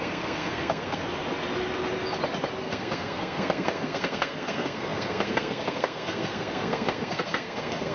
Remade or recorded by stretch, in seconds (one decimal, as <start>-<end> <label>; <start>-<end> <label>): 0.0-1.0 remade; 1.0-2.6 recorded; 2.6-7.9 remade